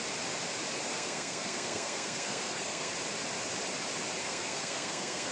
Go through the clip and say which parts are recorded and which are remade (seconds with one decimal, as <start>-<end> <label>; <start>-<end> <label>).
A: 0.0-0.9 recorded; 0.9-2.9 remade; 2.9-4.2 recorded; 4.2-5.3 remade